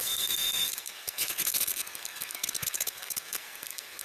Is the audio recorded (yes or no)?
no